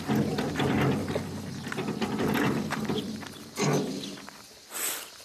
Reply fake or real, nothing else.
real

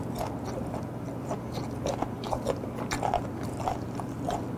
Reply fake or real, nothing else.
real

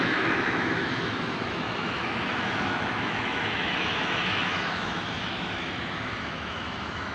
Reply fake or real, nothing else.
fake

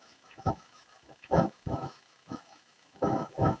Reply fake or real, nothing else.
fake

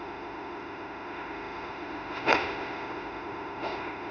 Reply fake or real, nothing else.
fake